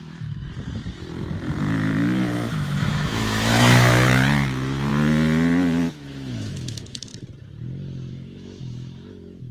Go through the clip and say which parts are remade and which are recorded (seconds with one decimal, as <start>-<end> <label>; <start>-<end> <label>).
0.0-0.4 remade; 0.4-2.5 recorded; 2.5-4.9 remade; 4.9-5.9 recorded; 5.9-7.1 remade; 7.1-8.1 recorded; 8.1-9.5 remade